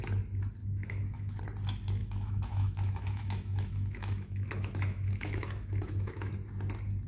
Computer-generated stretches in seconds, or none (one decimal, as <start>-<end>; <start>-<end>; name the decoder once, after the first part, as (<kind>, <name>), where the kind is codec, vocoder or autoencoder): 0.6-1.4 (autoencoder, DAC-VAE); 2.0-6.3